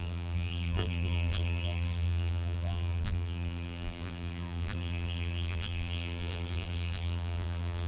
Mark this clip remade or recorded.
remade